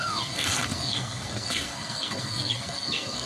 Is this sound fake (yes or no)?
yes